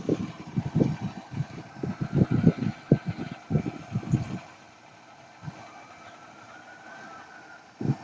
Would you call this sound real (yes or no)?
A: yes